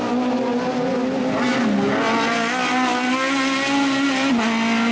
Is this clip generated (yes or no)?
no